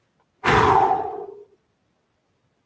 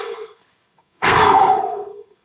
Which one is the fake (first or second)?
second